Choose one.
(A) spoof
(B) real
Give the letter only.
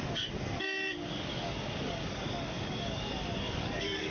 A